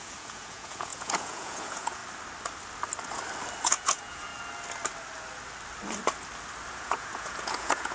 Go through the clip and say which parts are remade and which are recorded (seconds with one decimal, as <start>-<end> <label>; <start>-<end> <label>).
0.0-2.0 remade; 2.0-3.6 recorded; 3.6-4.3 remade; 4.3-6.7 recorded; 6.7-7.9 remade